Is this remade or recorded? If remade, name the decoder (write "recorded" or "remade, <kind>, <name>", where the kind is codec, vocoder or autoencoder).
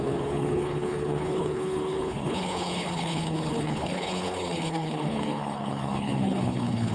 remade, codec, HILCodec